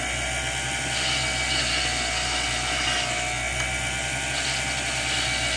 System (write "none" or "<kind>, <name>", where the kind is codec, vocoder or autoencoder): none